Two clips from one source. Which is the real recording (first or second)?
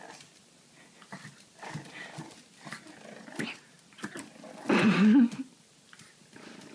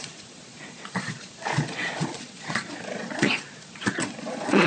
first